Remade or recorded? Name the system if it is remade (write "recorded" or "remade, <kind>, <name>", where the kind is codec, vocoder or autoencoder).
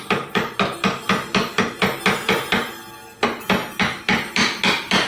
recorded